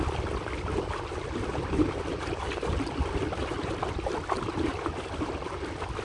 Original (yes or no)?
yes